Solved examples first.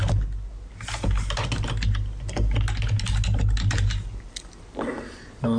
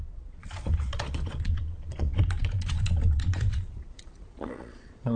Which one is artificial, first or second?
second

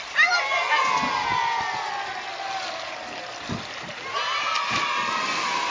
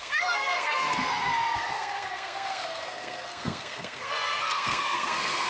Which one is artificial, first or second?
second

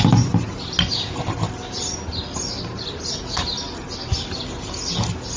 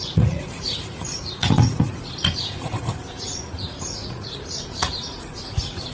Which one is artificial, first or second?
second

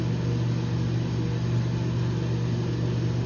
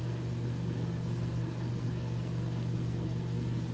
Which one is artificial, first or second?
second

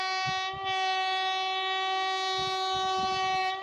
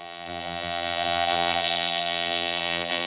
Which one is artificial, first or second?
second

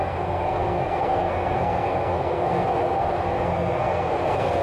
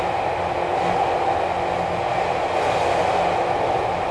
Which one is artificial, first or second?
first